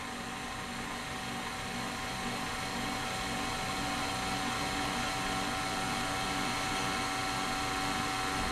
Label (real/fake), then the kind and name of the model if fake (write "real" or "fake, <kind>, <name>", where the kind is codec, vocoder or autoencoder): real